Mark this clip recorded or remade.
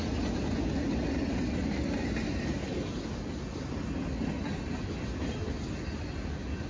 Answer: recorded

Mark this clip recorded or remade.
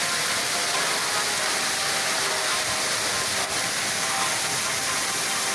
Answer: recorded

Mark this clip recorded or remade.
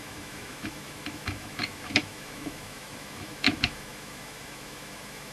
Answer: remade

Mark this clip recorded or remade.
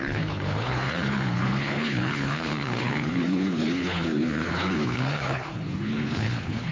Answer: remade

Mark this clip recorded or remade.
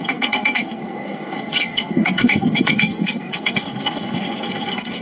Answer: remade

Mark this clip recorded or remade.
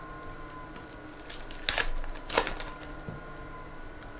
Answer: recorded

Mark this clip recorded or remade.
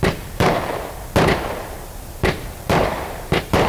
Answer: remade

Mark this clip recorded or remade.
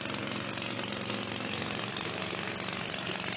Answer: recorded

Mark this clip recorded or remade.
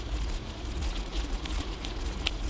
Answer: remade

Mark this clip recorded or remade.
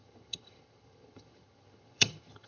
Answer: remade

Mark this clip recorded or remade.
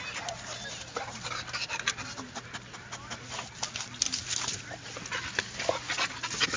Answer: recorded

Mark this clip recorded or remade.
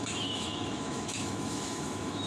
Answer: remade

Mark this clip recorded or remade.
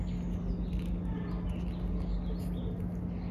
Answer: recorded